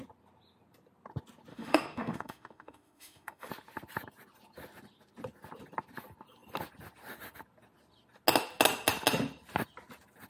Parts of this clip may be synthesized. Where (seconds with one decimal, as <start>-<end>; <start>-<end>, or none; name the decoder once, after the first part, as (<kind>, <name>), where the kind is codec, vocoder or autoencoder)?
1.5-3.5 (autoencoder, DAC-VAE)